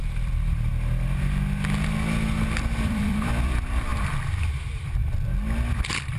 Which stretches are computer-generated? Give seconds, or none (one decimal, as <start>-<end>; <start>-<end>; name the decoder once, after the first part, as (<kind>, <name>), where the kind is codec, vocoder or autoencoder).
0.0-0.7 (vocoder, BigVGAN v2); 2.7-5.0; 5.7-6.2